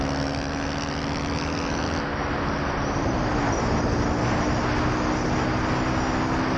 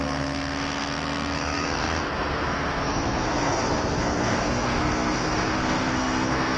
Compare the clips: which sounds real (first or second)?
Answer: first